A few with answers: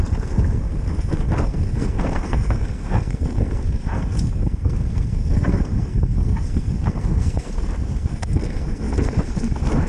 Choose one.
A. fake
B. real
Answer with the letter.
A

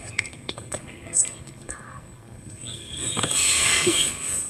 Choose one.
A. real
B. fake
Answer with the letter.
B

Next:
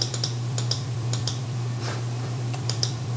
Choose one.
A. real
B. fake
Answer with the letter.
B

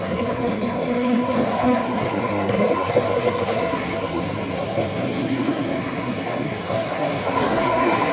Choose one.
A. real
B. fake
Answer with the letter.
B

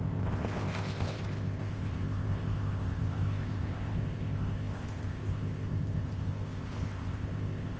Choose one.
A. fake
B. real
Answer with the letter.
A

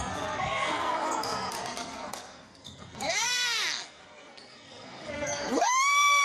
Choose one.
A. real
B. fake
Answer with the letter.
B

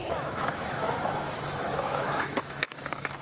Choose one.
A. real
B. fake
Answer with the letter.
B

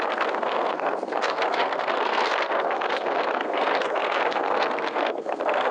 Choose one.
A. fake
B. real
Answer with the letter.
A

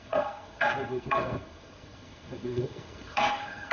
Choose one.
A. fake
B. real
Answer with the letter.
A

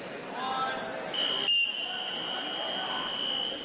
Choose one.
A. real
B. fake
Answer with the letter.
A